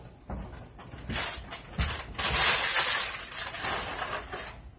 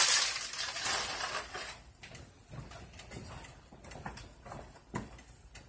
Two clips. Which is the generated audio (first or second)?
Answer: second